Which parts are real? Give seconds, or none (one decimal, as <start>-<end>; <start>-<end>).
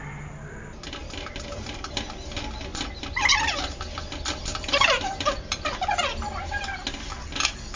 0.0-1.0; 1.9-4.5; 5.9-7.8